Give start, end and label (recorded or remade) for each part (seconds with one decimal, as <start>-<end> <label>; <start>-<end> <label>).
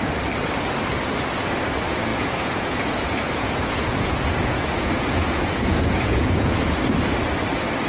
0.0-2.1 recorded; 2.1-6.8 remade; 6.8-7.9 recorded